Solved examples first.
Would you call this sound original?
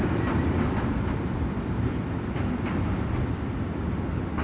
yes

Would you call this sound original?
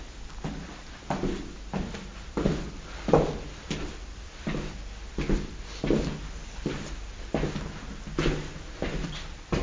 yes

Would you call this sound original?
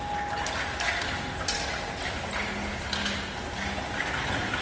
yes